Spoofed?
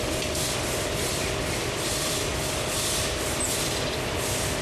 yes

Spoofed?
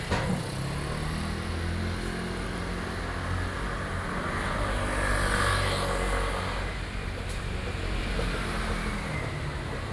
no